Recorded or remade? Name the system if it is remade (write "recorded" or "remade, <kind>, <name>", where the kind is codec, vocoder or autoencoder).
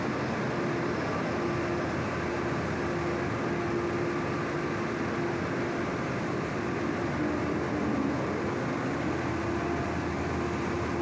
recorded